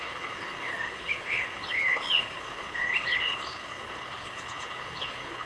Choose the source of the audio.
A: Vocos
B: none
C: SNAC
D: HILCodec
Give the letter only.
D